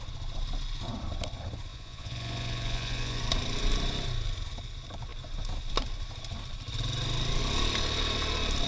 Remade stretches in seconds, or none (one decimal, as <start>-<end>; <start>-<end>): 1.7-3.2